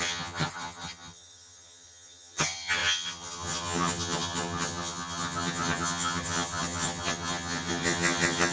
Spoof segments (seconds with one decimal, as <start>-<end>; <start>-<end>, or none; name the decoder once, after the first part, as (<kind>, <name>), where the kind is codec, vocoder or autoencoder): 0.0-8.5 (vocoder, HiFi-GAN)